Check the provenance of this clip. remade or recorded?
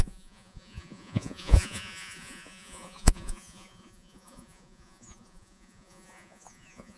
remade